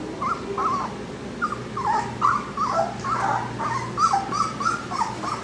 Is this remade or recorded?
recorded